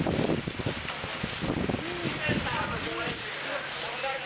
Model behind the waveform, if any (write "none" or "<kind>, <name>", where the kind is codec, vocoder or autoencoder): vocoder, BigVGAN v2